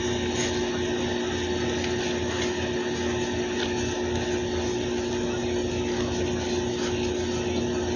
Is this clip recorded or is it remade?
recorded